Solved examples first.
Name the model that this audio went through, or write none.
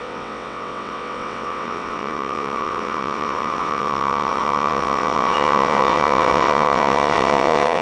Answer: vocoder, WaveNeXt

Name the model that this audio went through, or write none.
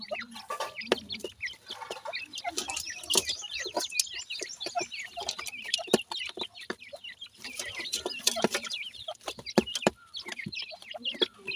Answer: none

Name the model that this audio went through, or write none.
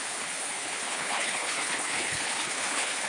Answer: codec, HILCodec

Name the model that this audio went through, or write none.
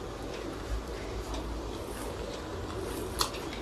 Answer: none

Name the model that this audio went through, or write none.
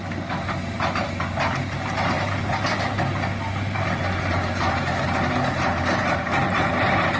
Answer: none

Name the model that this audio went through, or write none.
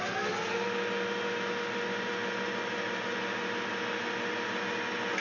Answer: none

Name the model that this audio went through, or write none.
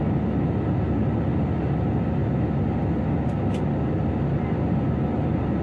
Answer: none